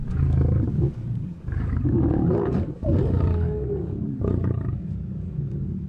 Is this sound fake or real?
fake